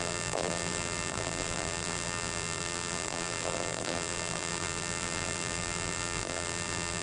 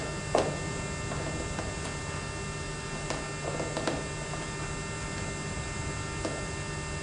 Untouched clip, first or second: second